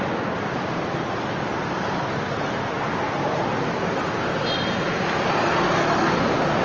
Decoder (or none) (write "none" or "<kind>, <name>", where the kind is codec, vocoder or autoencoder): none